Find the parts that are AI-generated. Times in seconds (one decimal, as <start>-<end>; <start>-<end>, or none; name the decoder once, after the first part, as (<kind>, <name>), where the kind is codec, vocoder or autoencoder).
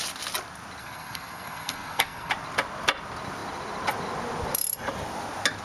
0.8-2.3 (codec, SNAC)